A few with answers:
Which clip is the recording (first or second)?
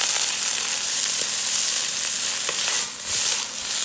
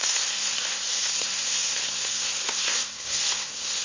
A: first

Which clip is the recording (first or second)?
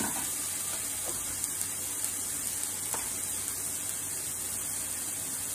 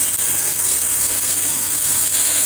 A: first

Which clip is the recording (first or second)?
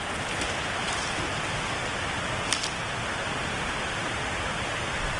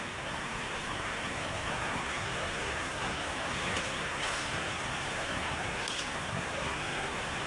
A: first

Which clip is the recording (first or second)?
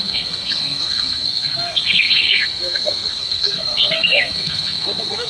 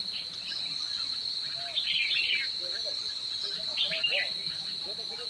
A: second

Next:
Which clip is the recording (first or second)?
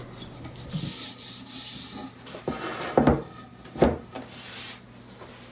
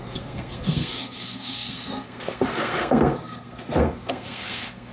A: first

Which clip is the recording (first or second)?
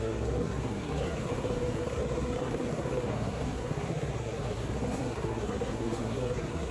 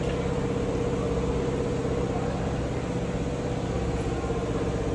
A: second